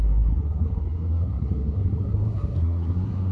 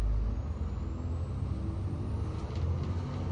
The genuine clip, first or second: second